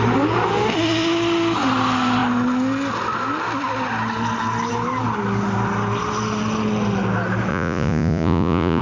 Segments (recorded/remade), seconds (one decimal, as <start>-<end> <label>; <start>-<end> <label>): 0.0-7.5 recorded; 7.5-8.8 remade